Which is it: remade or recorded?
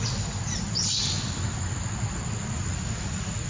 recorded